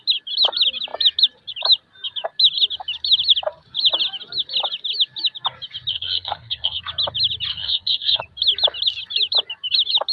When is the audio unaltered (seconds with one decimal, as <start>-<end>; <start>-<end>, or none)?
0.0-5.9; 6.8-7.5; 8.2-10.1